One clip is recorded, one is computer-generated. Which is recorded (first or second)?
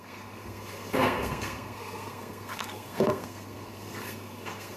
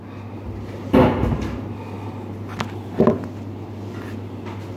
second